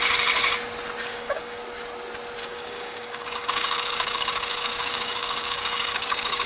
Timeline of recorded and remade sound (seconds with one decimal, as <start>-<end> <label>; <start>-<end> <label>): 0.0-1.1 recorded; 1.1-1.6 remade; 1.6-2.4 recorded; 2.4-6.5 remade